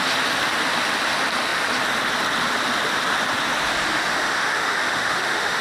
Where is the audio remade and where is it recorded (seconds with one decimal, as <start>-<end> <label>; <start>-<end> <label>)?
0.0-4.1 recorded; 4.1-5.6 remade